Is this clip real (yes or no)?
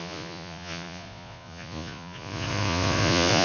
no